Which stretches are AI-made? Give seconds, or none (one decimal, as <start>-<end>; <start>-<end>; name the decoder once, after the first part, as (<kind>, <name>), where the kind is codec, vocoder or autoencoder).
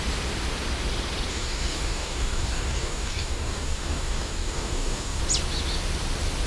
1.3-5.2 (codec, DAC)